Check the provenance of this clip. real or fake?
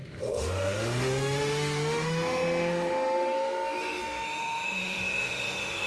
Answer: fake